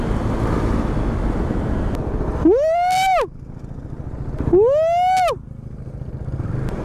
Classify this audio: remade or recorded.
recorded